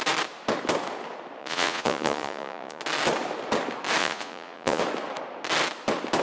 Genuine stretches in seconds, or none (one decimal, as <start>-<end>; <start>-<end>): 0.0-1.4; 2.8-4.0; 4.8-6.2